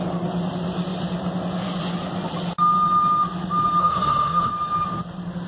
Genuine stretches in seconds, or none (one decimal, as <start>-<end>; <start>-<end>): 0.0-3.8; 4.5-5.5